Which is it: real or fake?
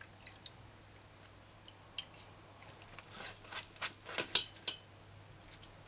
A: real